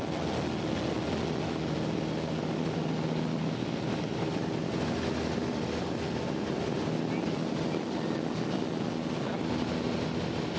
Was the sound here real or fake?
real